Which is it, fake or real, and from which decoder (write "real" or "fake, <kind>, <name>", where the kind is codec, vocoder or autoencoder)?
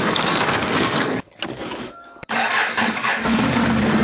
fake, codec, DAC